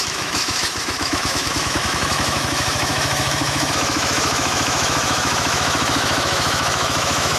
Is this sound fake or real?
fake